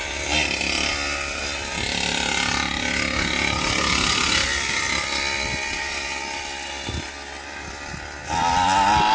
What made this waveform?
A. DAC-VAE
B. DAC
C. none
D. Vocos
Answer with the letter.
C